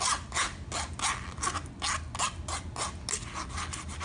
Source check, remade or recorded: recorded